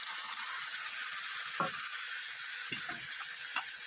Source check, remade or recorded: recorded